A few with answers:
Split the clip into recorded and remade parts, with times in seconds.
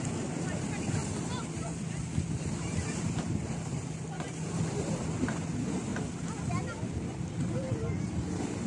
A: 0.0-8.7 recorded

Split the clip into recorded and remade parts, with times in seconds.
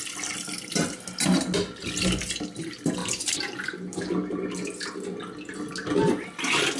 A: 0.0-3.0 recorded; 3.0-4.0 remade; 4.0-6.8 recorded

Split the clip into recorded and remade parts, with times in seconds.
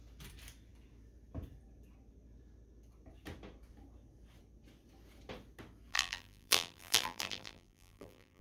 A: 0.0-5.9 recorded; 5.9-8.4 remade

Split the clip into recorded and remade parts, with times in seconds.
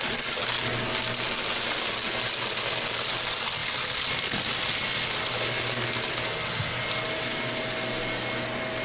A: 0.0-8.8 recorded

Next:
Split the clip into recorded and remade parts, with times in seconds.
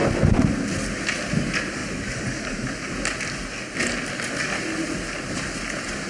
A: 0.0-6.1 recorded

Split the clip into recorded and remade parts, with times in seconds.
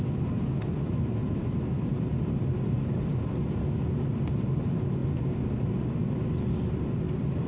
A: 0.0-5.0 recorded; 5.0-5.6 remade; 5.6-7.5 recorded